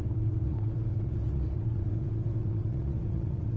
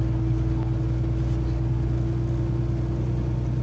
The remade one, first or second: first